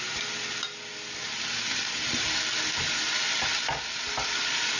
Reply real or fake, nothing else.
real